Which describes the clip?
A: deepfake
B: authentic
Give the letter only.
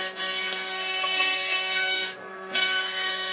A